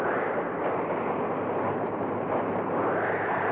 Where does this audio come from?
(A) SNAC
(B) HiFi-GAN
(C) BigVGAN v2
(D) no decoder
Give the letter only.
D